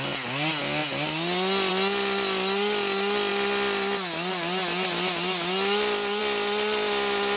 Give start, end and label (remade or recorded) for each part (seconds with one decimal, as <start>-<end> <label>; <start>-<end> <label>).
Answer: 0.0-7.4 recorded